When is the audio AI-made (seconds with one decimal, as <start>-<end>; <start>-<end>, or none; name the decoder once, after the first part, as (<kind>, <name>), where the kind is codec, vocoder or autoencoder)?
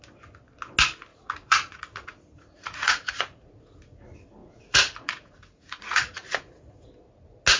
1.1-3.6 (vocoder, Vocos); 4.4-6.9